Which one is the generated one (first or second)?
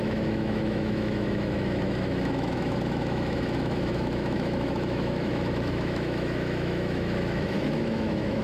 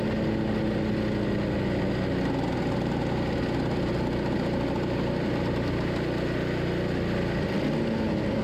first